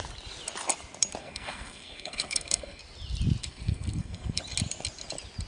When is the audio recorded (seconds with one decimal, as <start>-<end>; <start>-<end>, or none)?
0.0-1.2; 2.8-3.4; 4.4-5.5